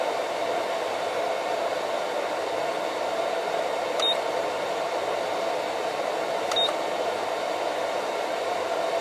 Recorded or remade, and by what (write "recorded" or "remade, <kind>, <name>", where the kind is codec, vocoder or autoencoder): recorded